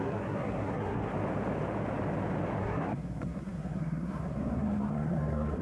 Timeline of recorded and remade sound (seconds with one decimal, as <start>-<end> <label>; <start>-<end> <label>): 0.0-1.1 remade; 1.1-2.6 recorded; 2.6-5.6 remade